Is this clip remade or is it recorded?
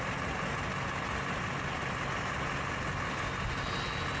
recorded